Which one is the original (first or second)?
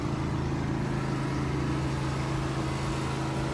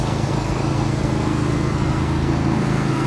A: first